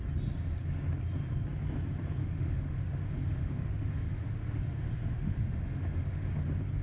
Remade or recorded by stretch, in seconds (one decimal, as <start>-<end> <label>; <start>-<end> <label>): 0.0-2.2 recorded; 2.2-6.3 remade; 6.3-6.8 recorded